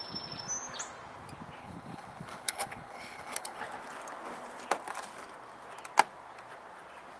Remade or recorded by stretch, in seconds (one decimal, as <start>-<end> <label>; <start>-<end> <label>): 0.0-1.6 recorded; 1.6-3.6 remade; 3.6-7.2 recorded

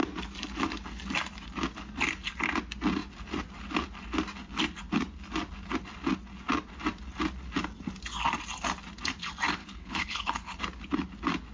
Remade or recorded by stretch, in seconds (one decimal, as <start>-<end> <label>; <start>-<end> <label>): 0.0-9.6 recorded; 9.6-10.6 remade; 10.6-11.5 recorded

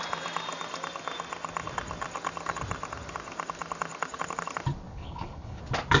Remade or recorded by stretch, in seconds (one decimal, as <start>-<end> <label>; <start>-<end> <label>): 0.0-4.9 recorded; 4.9-5.6 remade; 5.6-6.0 recorded

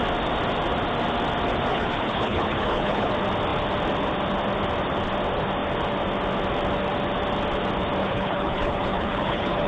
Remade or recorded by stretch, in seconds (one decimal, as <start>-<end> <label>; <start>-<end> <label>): 0.0-1.7 recorded; 1.7-3.1 remade; 3.1-8.0 recorded; 8.0-9.7 remade